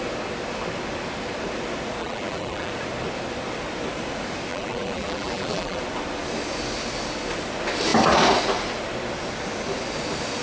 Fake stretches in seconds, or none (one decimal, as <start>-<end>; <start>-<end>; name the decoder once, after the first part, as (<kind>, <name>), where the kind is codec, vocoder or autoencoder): 2.0-2.7 (vocoder, BigVGAN v2); 4.5-5.8